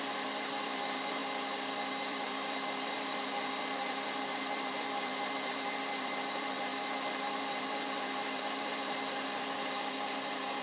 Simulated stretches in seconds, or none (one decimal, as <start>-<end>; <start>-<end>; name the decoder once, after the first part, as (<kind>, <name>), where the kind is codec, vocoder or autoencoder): 0.0-1.2 (vocoder, BigVGAN v2); 2.1-6.7; 7.2-10.6